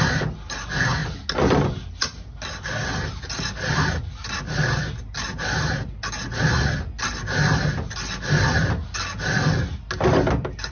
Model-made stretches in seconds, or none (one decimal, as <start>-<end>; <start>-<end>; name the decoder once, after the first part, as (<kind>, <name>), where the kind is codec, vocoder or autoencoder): none